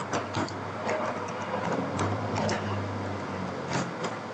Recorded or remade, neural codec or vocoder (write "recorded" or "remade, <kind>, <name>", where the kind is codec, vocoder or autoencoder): recorded